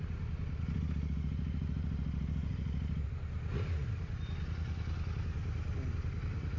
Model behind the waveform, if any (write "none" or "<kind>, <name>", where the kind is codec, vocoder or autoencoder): none